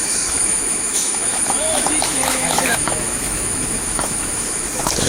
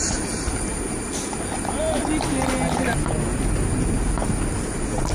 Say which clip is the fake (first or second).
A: first